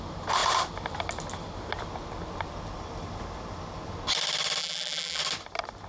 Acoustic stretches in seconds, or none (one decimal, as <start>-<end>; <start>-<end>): 0.0-4.6; 5.2-5.9